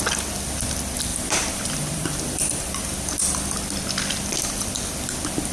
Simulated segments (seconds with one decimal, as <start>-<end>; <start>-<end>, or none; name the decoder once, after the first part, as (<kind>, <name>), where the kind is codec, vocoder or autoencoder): 1.1-2.8 (vocoder, BigVGAN v2)